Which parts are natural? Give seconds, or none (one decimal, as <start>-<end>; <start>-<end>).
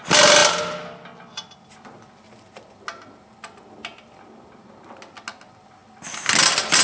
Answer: 0.0-6.8